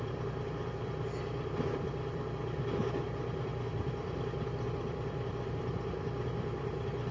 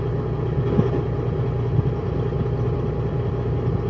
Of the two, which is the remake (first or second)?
first